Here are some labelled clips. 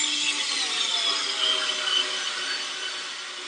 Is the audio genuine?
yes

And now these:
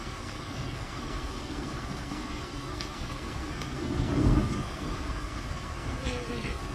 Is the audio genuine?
no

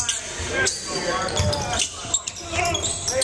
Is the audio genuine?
yes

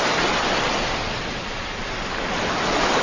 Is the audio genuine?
yes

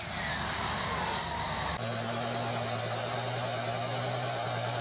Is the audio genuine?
yes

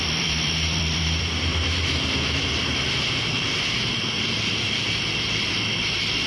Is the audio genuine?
no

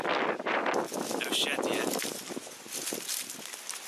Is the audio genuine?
yes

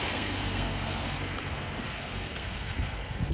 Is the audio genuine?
no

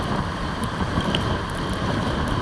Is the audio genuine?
no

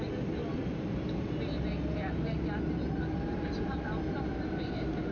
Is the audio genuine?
yes